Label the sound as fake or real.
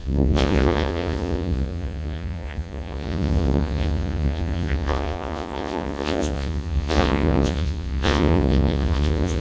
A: fake